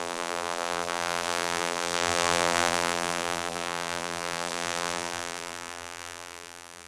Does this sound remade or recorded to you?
remade